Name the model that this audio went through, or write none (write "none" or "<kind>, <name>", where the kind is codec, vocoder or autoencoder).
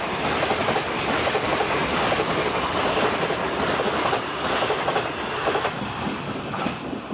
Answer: none